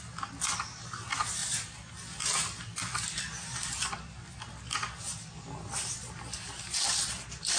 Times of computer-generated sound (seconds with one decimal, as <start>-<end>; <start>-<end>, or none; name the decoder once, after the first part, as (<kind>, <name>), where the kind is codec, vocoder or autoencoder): none